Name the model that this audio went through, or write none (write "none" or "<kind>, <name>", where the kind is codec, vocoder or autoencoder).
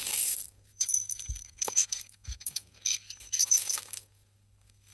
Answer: codec, SNAC